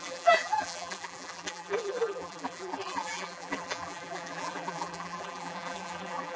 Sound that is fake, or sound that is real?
fake